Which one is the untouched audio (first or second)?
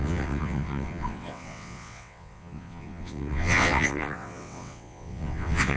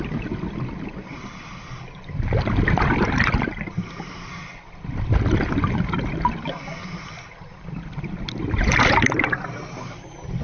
second